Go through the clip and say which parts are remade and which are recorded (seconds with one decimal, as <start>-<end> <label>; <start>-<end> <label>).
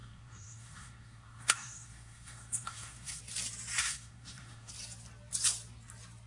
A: 0.0-3.2 remade; 3.2-3.8 recorded; 3.8-4.7 remade; 4.7-6.3 recorded